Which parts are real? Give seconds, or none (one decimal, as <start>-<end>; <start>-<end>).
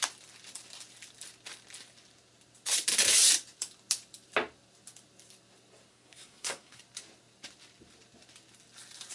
0.0-5.9; 6.8-9.1